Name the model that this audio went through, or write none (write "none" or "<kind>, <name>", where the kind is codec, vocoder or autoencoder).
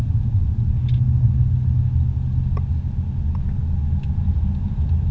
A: none